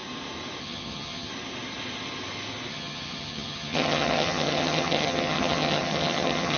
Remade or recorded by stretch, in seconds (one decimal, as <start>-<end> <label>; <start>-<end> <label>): 0.0-0.6 recorded; 0.6-1.3 remade; 1.3-2.7 recorded; 2.7-6.6 remade